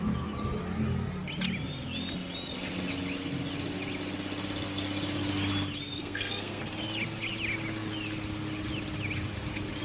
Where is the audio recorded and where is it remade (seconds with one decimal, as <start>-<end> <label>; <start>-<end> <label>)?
0.0-6.0 recorded; 6.0-6.6 remade; 6.6-9.8 recorded